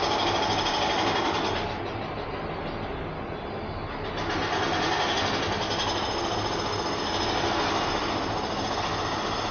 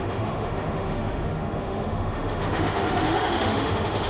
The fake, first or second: second